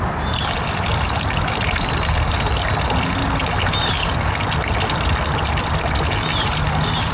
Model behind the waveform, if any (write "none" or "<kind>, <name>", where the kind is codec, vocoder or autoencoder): none